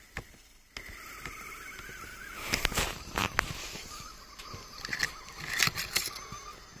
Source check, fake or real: real